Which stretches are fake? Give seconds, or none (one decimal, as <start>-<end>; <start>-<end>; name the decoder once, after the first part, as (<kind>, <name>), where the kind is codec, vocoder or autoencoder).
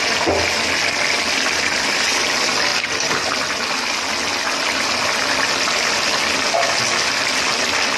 none